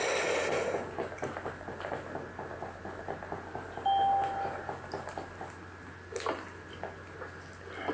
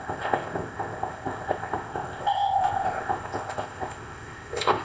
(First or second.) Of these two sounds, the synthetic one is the second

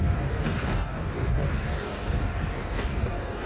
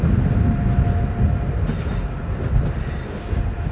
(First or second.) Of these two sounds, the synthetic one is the first